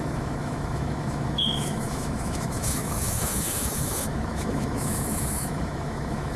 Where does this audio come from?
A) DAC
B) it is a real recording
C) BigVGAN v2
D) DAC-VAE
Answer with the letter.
D